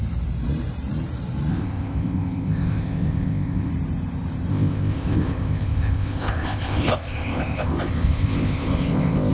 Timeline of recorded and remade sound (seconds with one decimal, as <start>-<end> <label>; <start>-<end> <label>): 0.0-1.5 recorded; 1.5-3.7 remade; 3.7-4.5 recorded; 4.5-9.3 remade